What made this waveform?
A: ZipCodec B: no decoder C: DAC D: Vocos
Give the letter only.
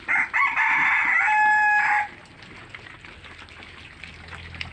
B